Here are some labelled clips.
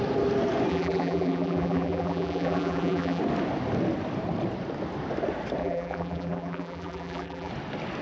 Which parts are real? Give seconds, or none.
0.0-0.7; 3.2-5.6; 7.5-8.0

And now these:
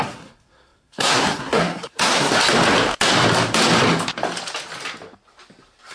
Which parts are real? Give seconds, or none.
2.3-5.9